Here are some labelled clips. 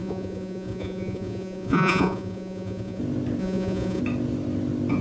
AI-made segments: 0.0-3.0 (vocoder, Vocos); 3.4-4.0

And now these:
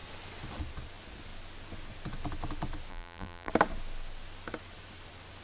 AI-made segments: 2.9-3.5 (vocoder, BigVGAN v2)

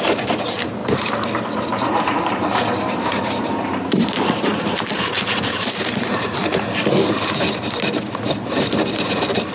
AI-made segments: 0.0-6.4 (vocoder, BigVGAN v2)

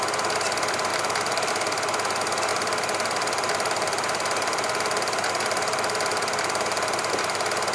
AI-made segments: 0.9-1.5 (vocoder, BigVGAN v2); 2.5-7.1

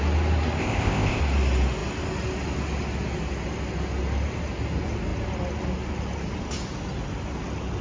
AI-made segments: 0.6-1.2 (codec, ZipCodec)

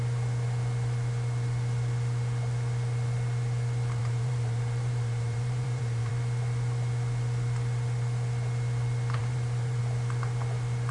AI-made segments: 4.0-6.1 (vocoder, BigVGAN v2); 9.2-9.8

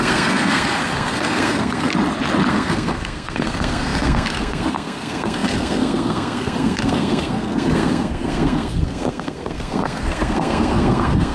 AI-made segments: 0.0-1.9 (codec, SNAC); 2.5-11.3